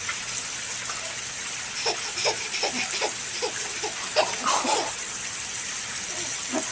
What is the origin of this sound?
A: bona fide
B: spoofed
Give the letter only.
A